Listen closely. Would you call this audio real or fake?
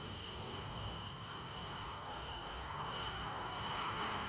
fake